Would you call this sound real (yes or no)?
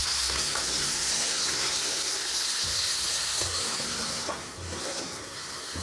no